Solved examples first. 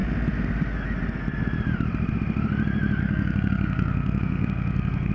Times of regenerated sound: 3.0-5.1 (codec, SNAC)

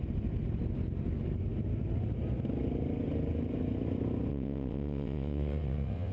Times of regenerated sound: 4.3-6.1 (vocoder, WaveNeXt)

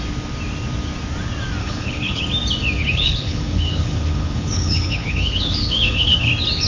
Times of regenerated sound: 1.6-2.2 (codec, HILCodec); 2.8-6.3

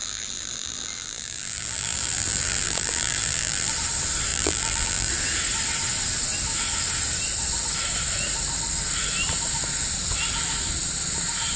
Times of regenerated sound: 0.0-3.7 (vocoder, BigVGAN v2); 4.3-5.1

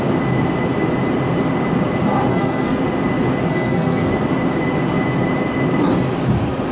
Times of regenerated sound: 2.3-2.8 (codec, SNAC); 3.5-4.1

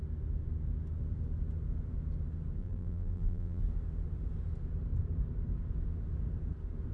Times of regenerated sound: 2.6-3.6 (vocoder, BigVGAN v2)

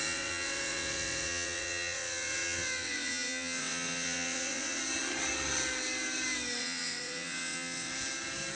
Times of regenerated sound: 0.0-4.8 (vocoder, WaveNeXt); 6.6-7.9

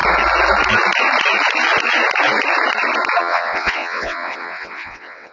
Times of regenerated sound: 3.2-5.3 (vocoder, WaveNeXt)